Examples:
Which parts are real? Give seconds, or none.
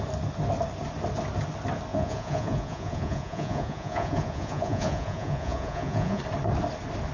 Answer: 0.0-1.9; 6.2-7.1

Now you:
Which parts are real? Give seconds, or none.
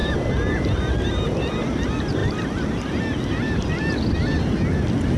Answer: 0.0-5.2